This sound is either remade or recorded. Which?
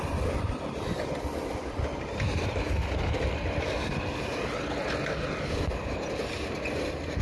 recorded